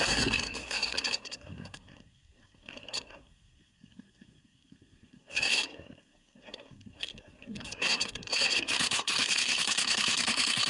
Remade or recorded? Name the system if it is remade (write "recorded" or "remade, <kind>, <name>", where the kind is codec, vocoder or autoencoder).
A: remade, codec, SNAC